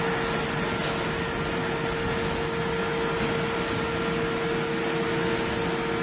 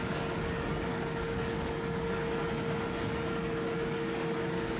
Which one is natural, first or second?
first